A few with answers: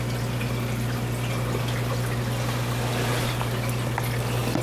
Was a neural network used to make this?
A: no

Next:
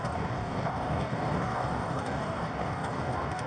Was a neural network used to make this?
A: yes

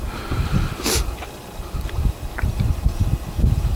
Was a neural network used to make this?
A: no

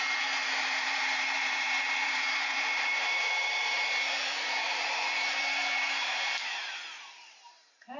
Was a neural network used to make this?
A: yes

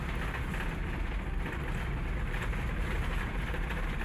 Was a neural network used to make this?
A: no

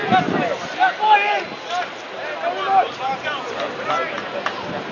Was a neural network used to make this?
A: no